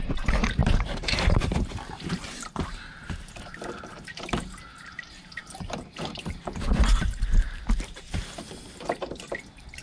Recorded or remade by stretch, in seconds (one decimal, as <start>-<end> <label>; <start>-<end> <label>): 0.0-9.8 remade